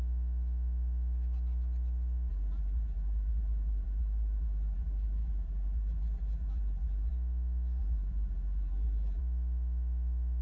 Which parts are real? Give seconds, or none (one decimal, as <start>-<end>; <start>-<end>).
0.0-2.3; 7.1-7.8; 9.2-10.4